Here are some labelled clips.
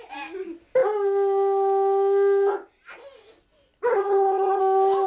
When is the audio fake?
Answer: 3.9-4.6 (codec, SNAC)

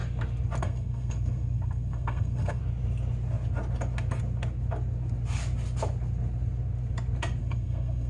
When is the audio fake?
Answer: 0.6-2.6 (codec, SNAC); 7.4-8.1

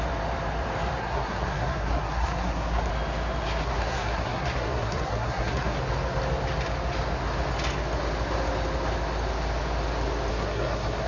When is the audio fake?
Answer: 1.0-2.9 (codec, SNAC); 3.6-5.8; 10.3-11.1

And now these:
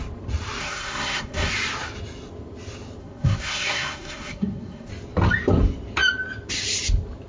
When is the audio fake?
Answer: 0.6-1.5 (codec, SNAC); 3.0-4.9